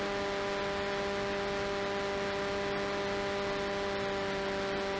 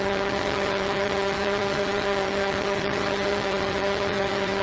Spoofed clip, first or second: second